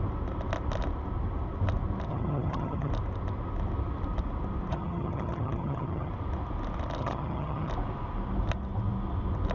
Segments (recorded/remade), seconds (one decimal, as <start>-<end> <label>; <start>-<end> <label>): 0.0-2.1 recorded; 2.1-2.9 remade; 2.9-4.7 recorded; 4.7-6.1 remade; 6.1-7.0 recorded; 7.0-7.7 remade; 7.7-9.5 recorded